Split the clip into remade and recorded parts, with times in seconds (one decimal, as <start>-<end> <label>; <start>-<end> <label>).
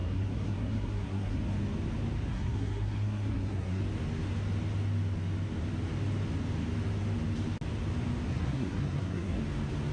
0.0-1.4 remade; 1.4-2.3 recorded; 2.3-3.8 remade; 3.8-8.3 recorded; 8.3-9.4 remade; 9.4-9.9 recorded